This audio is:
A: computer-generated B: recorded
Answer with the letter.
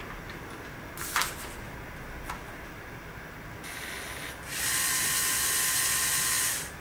B